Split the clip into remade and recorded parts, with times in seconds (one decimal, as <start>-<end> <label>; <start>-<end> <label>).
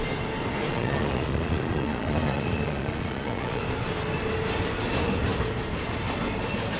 0.0-0.7 recorded; 0.7-3.6 remade; 3.6-6.8 recorded